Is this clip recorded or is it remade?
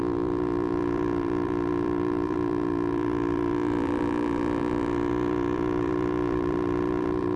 remade